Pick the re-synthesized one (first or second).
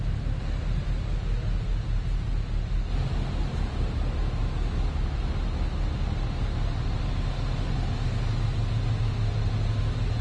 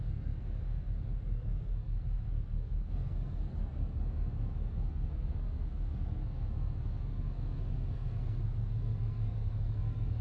second